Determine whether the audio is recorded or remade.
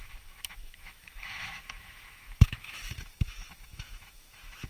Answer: remade